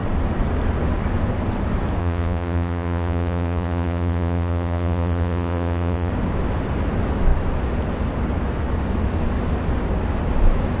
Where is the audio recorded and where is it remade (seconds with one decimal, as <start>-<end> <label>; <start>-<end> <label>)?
0.0-2.0 recorded; 2.0-6.1 remade; 6.1-10.8 recorded